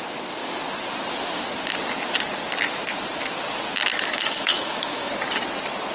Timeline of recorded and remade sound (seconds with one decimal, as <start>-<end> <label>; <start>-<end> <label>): 0.0-3.9 recorded; 3.9-5.1 remade; 5.1-5.9 recorded